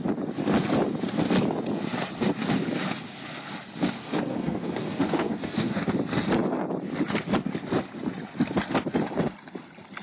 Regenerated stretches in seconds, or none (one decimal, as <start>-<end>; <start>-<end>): 4.0-5.9